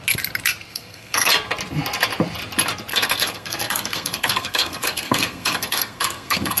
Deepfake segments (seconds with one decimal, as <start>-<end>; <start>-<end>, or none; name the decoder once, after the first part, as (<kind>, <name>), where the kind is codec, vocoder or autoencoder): 0.7-1.3 (codec, SNAC); 2.9-6.6